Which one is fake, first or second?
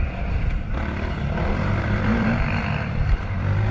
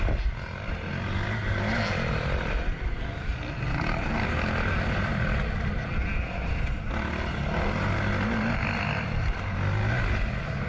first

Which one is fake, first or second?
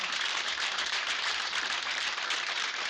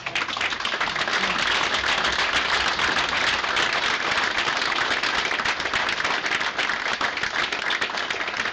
first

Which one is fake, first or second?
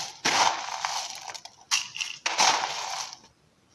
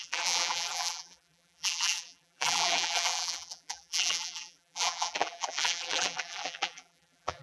second